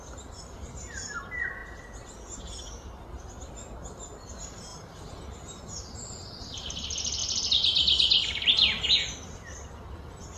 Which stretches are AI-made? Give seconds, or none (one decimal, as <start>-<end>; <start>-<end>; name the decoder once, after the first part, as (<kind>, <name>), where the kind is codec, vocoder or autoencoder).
none